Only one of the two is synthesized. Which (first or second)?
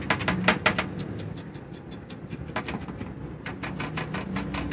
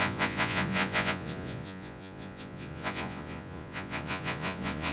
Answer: second